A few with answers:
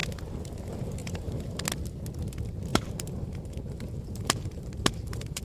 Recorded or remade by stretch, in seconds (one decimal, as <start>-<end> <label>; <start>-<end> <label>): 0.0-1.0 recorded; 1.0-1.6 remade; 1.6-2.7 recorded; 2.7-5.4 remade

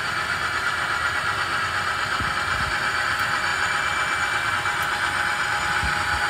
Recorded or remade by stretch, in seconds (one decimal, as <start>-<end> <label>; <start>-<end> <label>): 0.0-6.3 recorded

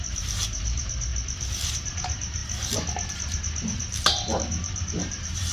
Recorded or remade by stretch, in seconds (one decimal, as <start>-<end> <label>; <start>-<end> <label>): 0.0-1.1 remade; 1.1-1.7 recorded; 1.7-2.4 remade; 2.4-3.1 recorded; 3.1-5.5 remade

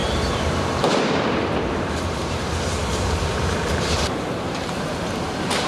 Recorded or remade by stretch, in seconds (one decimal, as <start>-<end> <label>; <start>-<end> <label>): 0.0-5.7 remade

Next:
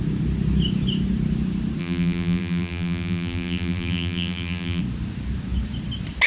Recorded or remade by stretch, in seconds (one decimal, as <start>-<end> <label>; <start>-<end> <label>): 0.0-1.8 recorded; 1.8-4.8 remade; 4.8-6.3 recorded

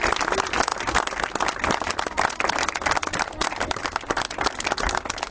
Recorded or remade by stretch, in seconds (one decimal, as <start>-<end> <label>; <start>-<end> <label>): 0.0-5.3 recorded